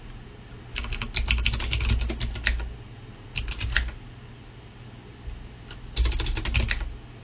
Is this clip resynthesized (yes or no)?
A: no